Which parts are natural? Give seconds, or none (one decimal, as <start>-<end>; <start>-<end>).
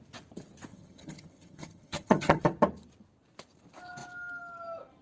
0.0-0.7; 2.4-5.0